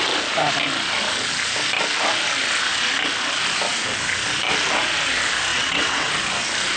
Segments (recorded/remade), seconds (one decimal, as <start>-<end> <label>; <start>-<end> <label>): 0.0-5.5 recorded; 5.5-6.1 remade; 6.1-6.8 recorded